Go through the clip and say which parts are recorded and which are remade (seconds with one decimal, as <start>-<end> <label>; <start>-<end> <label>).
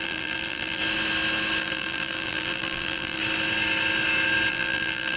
0.0-0.8 remade; 0.8-1.6 recorded; 1.6-3.2 remade; 3.2-4.5 recorded; 4.5-5.2 remade